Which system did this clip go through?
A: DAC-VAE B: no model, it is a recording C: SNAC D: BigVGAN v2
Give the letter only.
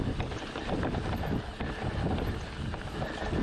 B